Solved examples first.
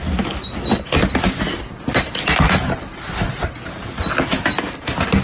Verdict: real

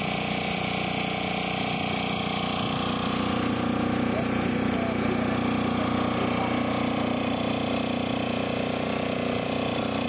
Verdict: real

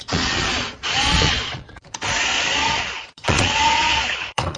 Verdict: fake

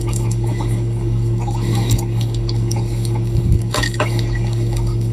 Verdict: fake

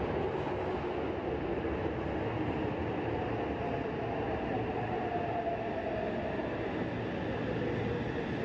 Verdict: real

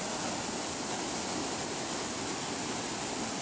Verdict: real